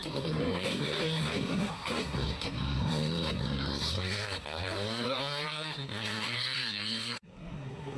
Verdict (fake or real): fake